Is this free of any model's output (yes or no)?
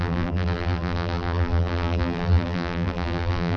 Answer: no